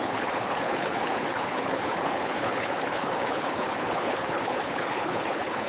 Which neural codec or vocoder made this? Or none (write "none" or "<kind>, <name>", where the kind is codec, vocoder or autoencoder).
codec, HILCodec